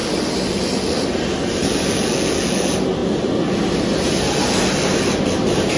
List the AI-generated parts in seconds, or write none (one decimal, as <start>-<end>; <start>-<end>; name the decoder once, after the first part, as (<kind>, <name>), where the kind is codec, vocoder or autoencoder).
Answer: none